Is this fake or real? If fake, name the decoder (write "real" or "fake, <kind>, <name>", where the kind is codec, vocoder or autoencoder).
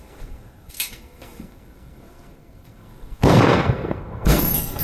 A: fake, codec, SNAC